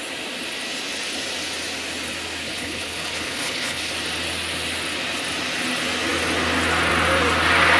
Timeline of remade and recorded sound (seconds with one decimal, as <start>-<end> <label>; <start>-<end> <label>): 0.0-2.4 recorded; 2.4-3.9 remade; 3.9-7.8 recorded